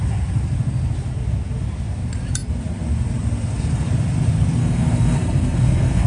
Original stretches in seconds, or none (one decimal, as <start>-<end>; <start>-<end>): 0.0-4.6